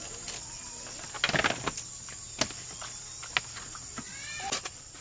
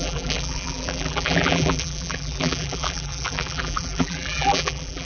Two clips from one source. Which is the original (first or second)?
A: first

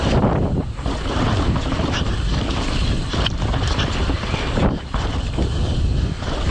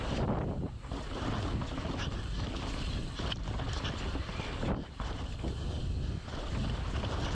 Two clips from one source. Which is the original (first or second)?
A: second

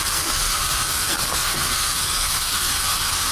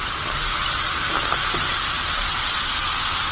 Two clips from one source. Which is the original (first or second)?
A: second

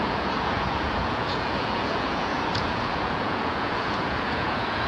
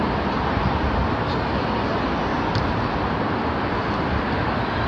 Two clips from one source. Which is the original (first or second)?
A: second